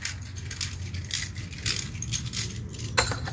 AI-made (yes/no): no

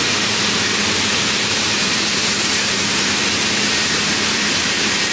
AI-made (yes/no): yes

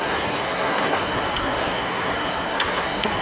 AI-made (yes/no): yes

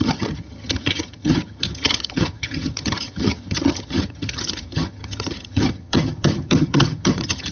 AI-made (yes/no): yes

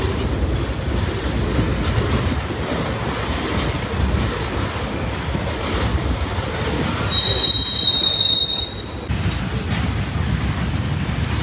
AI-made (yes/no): no